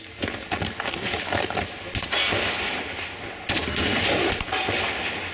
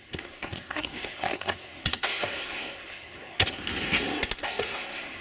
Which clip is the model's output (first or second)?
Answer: second